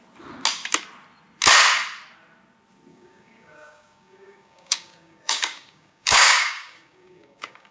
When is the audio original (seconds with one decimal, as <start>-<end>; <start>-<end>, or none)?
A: 0.0-2.9